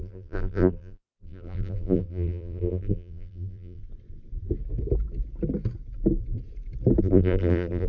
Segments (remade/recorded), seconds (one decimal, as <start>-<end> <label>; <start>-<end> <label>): 0.0-3.8 remade; 3.8-7.0 recorded; 7.0-7.9 remade